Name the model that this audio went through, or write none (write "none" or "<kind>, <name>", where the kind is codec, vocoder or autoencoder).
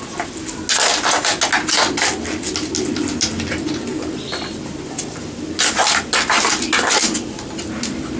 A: none